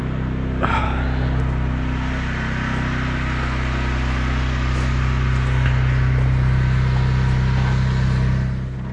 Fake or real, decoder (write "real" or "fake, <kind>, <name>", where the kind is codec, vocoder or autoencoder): real